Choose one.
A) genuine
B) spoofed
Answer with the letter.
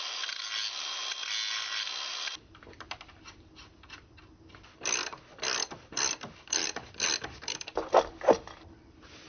A